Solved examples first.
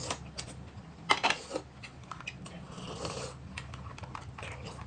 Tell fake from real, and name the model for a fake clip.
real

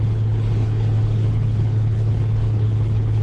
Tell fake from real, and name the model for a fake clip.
fake, codec, HILCodec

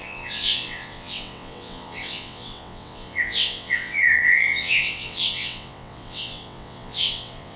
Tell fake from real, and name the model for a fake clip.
fake, vocoder, WaveNeXt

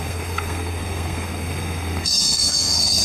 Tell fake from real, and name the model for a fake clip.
fake, codec, SNAC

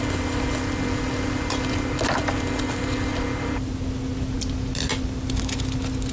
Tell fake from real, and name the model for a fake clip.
real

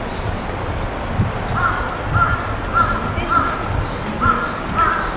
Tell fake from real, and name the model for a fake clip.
real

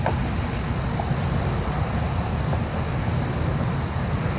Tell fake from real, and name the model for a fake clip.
real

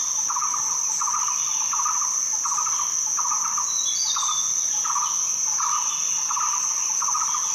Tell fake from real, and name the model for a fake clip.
real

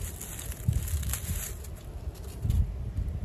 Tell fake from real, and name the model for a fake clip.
real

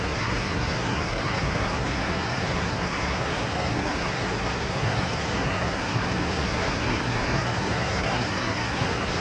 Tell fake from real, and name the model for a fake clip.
fake, codec, SNAC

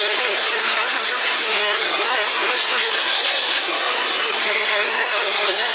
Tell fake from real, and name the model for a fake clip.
fake, codec, SNAC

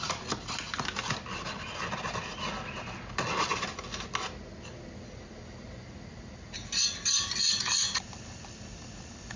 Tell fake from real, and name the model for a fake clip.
real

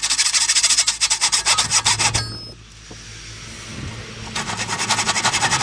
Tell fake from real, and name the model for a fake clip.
real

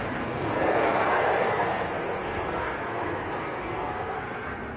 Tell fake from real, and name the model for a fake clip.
fake, codec, SNAC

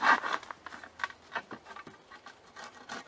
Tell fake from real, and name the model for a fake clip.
fake, vocoder, BigVGAN v2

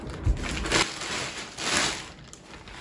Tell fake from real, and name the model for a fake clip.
real